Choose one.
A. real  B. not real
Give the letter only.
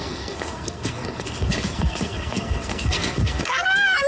B